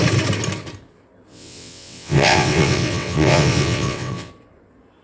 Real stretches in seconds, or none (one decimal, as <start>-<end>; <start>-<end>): 0.0-1.3; 4.3-5.0